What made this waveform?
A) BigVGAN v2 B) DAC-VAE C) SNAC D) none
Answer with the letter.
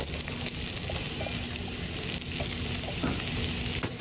D